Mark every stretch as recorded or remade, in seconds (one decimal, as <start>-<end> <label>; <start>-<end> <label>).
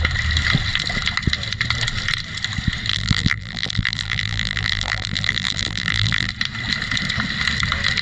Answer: 0.0-2.9 recorded; 2.9-6.3 remade; 6.3-8.0 recorded